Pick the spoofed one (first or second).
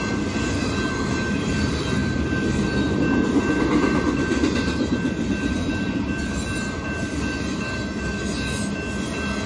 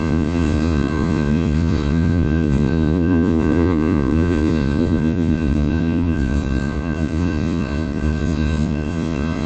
second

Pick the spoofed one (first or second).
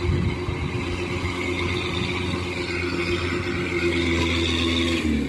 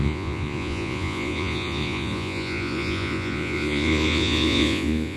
second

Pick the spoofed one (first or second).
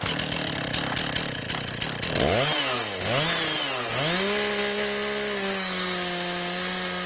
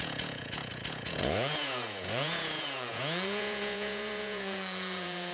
second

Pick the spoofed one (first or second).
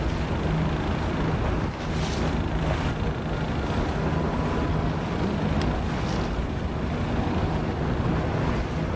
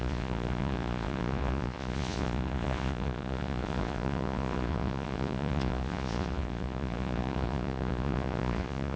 second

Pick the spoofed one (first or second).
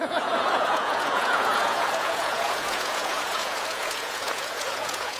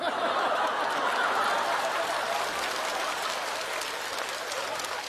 first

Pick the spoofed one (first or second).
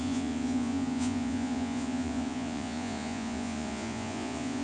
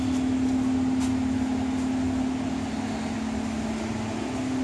first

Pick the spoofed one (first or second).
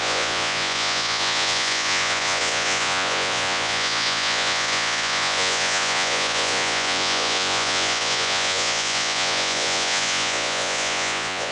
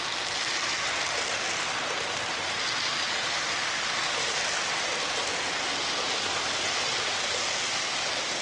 first